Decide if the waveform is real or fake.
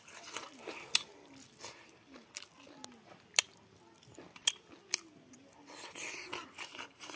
real